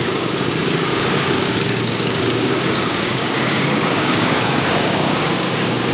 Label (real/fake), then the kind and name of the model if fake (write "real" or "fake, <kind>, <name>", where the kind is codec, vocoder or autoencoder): fake, codec, DAC